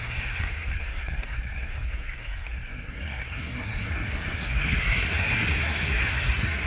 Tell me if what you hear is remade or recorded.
remade